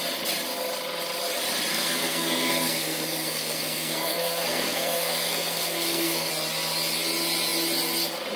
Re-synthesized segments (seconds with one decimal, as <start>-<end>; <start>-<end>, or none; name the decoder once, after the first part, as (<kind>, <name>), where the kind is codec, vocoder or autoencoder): 1.7-6.3 (codec, SNAC)